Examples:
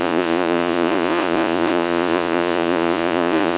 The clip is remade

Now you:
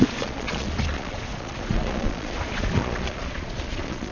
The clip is remade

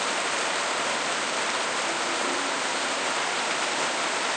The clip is remade